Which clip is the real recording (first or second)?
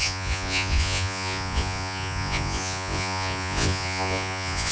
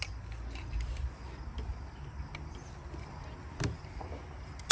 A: second